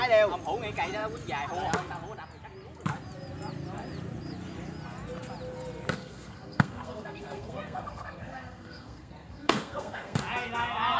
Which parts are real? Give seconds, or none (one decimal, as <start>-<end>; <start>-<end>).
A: 0.0-6.0; 10.2-11.0

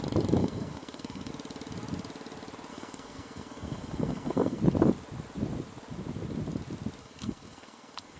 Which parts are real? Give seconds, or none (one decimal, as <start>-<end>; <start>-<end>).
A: 0.0-0.4; 1.3-2.7; 4.6-7.0